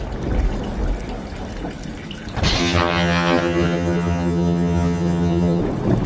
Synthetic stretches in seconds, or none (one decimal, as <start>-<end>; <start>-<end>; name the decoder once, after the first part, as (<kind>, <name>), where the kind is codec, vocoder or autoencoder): 2.6-5.6 (vocoder, HiFi-GAN)